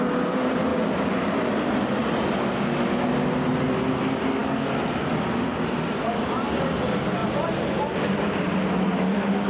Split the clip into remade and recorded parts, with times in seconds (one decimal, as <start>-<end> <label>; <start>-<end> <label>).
0.0-9.5 recorded